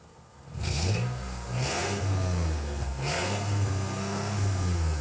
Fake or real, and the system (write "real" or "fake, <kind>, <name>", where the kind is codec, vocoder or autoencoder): fake, codec, SNAC